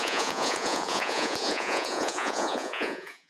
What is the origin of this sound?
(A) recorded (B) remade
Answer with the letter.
B